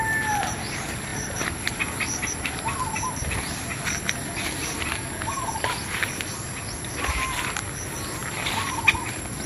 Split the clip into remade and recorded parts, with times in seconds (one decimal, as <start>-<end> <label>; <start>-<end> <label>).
0.0-1.1 recorded; 1.1-4.1 remade; 4.1-8.2 recorded; 8.2-9.5 remade